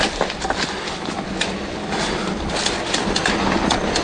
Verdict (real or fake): real